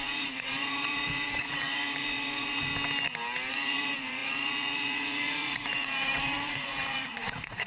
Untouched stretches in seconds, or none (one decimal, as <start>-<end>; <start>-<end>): 2.7-3.5